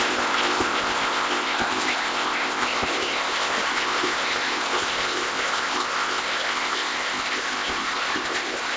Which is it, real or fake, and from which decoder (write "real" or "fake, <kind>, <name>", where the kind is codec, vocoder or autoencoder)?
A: fake, codec, ZipCodec